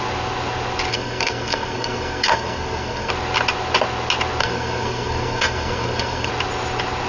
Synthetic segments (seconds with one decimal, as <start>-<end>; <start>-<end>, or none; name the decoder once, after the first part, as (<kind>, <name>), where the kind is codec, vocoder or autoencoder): 0.9-3.1 (codec, SNAC); 4.4-6.3